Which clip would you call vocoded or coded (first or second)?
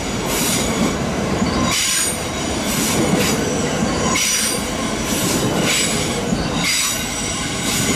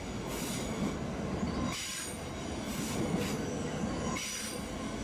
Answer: first